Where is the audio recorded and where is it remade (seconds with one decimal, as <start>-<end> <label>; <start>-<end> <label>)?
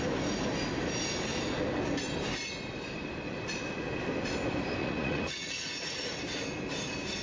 0.0-4.8 recorded; 4.8-6.1 remade; 6.1-7.2 recorded